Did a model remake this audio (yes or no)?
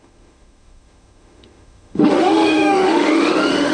yes